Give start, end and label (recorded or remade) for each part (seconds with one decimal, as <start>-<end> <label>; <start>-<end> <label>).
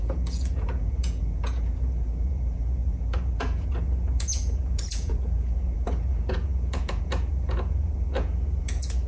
0.0-9.1 remade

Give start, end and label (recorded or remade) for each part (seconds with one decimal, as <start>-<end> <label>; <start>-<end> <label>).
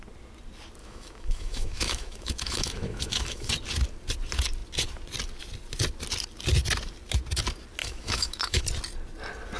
0.0-0.8 recorded; 0.8-3.5 remade; 3.5-7.8 recorded; 7.8-8.6 remade; 8.6-9.6 recorded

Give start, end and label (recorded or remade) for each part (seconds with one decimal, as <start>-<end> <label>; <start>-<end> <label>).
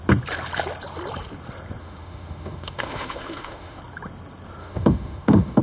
0.0-1.8 recorded; 1.8-3.8 remade; 3.8-4.6 recorded; 4.6-5.6 remade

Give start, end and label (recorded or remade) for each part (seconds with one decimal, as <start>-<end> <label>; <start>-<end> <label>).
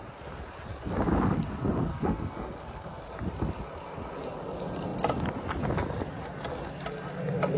0.0-1.9 recorded; 1.9-3.0 remade; 3.0-7.6 recorded